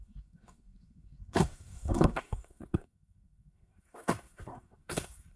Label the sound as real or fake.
fake